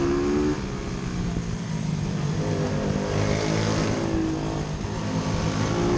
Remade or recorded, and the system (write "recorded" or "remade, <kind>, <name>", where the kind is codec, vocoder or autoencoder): recorded